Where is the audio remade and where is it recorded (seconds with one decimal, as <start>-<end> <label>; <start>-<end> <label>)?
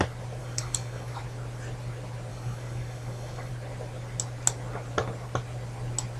0.0-0.4 recorded; 0.4-1.2 remade; 1.2-2.3 recorded; 2.3-3.5 remade; 3.5-6.2 recorded